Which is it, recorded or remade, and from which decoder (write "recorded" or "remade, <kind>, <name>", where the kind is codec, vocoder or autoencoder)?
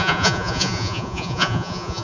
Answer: remade, vocoder, Vocos